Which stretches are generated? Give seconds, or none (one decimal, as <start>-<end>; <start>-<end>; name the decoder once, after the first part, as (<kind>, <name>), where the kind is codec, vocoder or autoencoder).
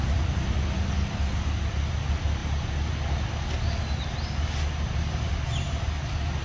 none